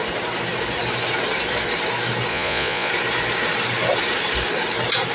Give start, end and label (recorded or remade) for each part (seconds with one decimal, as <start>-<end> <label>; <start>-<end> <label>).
0.0-2.3 recorded; 2.3-2.9 remade; 2.9-5.1 recorded